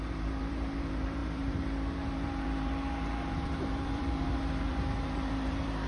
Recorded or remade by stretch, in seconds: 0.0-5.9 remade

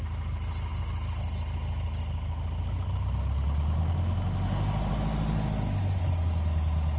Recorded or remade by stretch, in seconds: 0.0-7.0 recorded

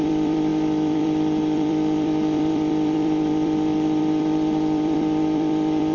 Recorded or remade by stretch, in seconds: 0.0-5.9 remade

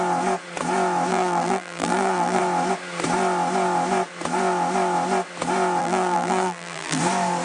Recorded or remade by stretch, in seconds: 0.0-1.1 recorded; 1.1-2.4 remade; 2.4-5.8 recorded; 5.8-7.0 remade; 7.0-7.4 recorded

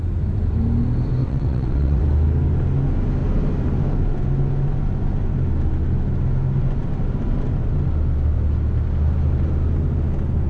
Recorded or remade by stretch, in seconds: 0.0-1.2 recorded; 1.2-2.0 remade; 2.0-10.5 recorded